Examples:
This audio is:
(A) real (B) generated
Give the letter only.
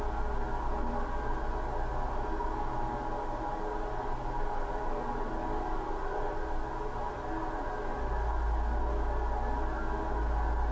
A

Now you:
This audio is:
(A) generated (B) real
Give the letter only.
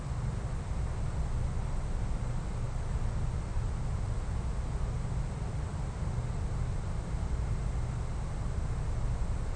B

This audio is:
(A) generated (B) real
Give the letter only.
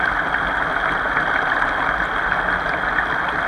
B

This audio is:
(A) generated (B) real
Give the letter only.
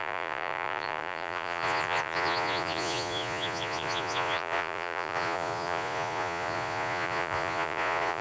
A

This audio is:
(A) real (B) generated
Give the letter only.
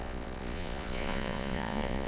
B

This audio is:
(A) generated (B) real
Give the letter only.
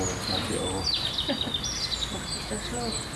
B